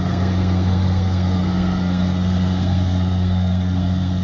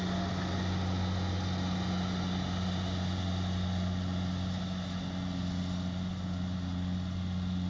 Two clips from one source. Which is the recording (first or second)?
second